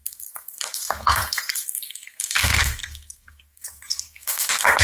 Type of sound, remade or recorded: remade